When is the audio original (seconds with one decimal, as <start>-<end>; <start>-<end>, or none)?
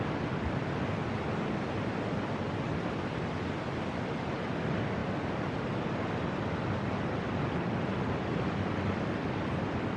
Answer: 0.0-10.0